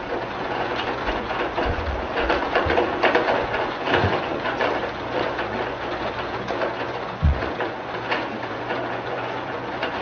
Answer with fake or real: fake